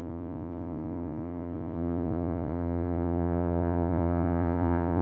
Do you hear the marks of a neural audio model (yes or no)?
yes